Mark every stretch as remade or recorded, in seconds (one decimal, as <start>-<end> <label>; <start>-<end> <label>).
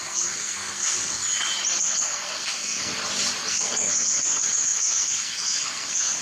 0.0-1.2 remade; 1.2-1.8 recorded; 1.8-2.9 remade; 2.9-3.5 recorded; 3.5-6.2 remade